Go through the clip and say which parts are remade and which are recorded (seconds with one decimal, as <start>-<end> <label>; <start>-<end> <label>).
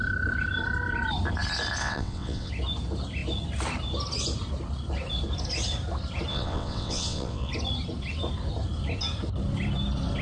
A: 0.0-1.8 recorded; 1.8-2.5 remade; 2.5-6.3 recorded; 6.3-7.5 remade; 7.5-10.2 recorded